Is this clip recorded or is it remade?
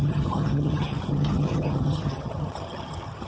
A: remade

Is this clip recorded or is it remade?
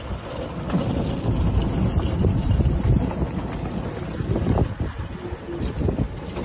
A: recorded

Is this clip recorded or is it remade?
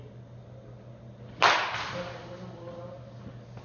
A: recorded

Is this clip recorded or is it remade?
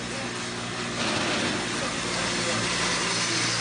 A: recorded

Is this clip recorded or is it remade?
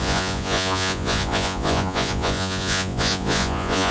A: remade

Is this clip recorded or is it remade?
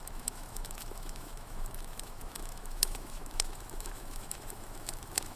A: remade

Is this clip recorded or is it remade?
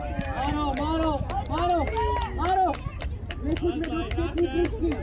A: recorded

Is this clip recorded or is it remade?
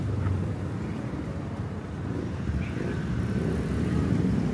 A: recorded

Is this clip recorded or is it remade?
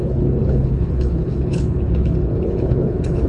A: remade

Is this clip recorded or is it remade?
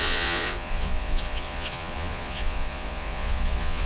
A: remade